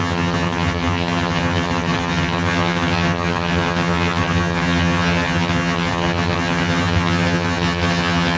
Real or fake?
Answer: fake